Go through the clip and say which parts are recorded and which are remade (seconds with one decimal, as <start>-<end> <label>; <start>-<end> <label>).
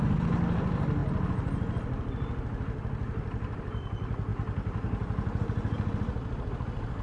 0.0-7.0 recorded